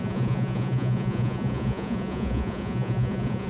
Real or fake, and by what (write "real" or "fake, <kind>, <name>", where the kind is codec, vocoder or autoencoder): fake, vocoder, Vocos